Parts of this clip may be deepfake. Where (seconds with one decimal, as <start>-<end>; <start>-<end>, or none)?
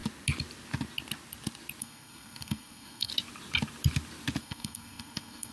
1.8-3.1; 4.4-5.5